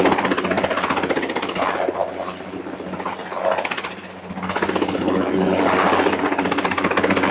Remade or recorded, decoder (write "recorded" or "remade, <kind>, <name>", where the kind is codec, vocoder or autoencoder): recorded